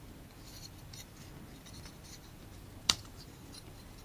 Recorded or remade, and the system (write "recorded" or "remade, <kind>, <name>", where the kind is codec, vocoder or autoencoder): remade, vocoder, BigVGAN v2